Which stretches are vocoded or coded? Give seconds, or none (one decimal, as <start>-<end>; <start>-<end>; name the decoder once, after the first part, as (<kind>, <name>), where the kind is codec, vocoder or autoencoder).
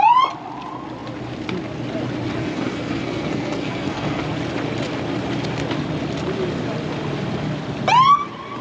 2.4-4.2 (codec, SNAC)